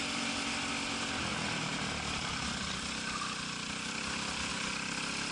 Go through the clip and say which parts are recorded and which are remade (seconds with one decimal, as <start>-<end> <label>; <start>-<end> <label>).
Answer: 0.0-5.3 recorded